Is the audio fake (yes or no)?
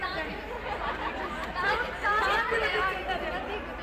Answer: no